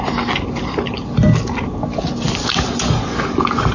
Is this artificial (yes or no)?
no